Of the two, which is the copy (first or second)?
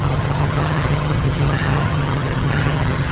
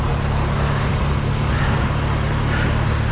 first